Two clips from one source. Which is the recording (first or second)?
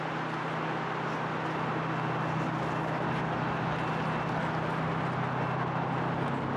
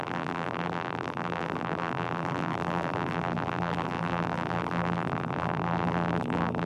first